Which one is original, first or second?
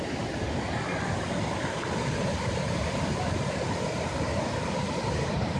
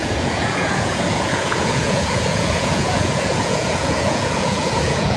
first